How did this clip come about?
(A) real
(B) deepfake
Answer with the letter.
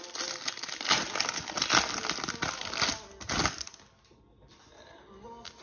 A